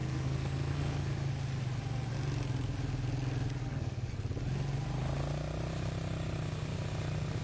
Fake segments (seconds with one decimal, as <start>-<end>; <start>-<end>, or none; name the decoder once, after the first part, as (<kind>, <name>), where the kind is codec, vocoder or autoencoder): 0.0-1.0 (codec, SNAC); 3.6-4.1